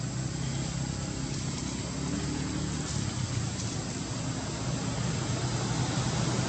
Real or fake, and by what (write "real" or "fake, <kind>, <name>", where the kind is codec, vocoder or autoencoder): real